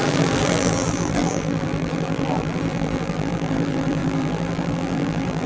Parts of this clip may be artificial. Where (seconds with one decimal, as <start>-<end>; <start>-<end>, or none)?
0.0-5.5